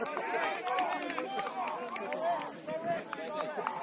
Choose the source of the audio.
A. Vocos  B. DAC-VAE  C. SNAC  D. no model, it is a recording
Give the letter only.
D